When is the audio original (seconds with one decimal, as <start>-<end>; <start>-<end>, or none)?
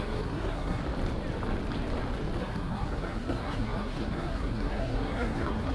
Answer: 0.8-2.4